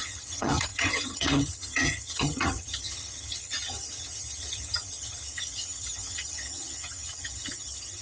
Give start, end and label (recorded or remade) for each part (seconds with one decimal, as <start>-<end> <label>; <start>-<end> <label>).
0.0-8.0 remade